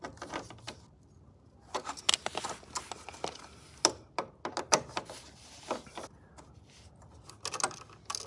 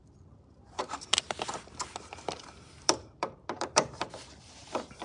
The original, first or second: first